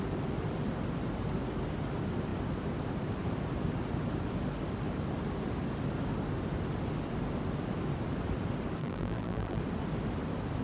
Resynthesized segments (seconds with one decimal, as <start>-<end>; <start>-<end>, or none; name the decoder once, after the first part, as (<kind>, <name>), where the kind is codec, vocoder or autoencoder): 8.8-9.6 (vocoder, BigVGAN v2)